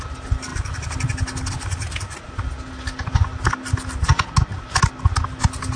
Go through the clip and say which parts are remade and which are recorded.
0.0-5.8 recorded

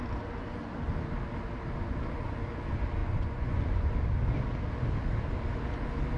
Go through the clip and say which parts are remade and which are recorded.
0.0-3.0 recorded; 3.0-3.9 remade; 3.9-6.2 recorded

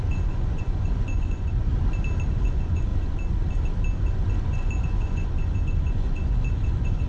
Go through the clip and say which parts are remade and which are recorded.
0.0-1.7 remade; 1.7-2.3 recorded; 2.3-2.9 remade; 2.9-4.4 recorded; 4.4-7.1 remade

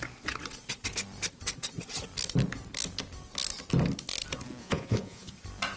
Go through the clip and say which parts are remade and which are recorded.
0.0-4.6 recorded; 4.6-5.3 remade; 5.3-5.8 recorded

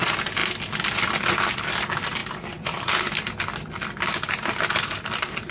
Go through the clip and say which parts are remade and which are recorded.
0.0-5.5 recorded

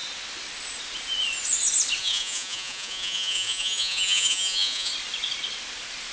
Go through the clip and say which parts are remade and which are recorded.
0.0-2.0 recorded; 2.0-4.9 remade; 4.9-6.1 recorded

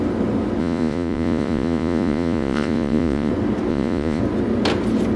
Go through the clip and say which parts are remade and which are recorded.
0.0-0.6 recorded; 0.6-3.3 remade; 3.3-3.7 recorded; 3.7-4.2 remade; 4.2-5.2 recorded

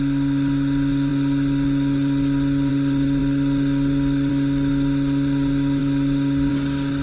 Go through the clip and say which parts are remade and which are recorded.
0.0-7.0 recorded